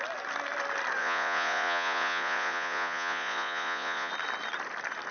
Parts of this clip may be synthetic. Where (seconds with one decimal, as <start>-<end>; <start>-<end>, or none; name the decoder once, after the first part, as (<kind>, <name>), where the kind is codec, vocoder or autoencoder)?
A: 1.0-4.1 (vocoder, Vocos)